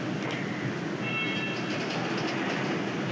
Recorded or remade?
recorded